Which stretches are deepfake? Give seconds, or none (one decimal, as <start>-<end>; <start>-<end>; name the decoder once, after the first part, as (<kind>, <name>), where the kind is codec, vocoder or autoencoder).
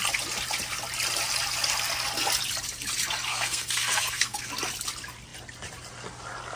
3.3-4.5 (codec, SNAC)